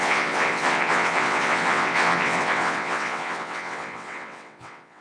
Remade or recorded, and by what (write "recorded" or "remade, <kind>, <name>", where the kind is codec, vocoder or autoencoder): remade, vocoder, WaveNeXt